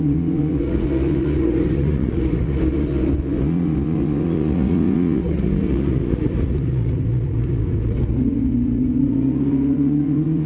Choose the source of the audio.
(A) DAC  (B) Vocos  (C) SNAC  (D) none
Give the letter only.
B